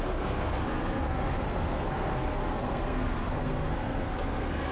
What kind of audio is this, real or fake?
fake